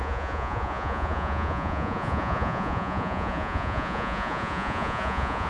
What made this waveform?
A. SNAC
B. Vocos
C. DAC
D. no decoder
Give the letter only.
B